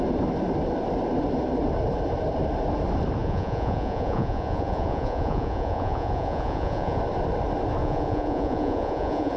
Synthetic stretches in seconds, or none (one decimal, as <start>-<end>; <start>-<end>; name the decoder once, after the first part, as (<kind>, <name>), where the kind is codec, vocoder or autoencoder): 3.2-7.0 (vocoder, Vocos); 7.8-9.4